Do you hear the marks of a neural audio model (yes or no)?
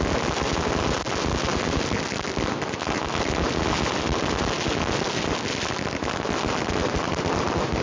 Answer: no